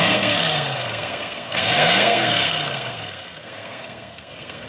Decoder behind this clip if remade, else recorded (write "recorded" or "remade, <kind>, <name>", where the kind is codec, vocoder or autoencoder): remade, codec, SNAC